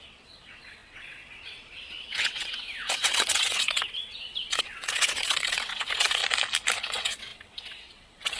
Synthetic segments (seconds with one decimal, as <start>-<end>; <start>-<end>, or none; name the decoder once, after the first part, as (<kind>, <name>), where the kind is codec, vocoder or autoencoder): 0.0-6.2 (vocoder, WaveNeXt); 6.8-8.4